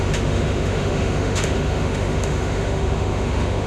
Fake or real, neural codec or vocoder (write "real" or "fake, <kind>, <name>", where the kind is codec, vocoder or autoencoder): fake, autoencoder, DAC-VAE